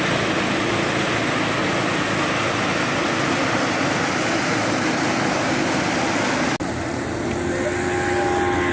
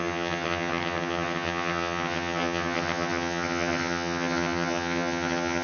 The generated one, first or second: second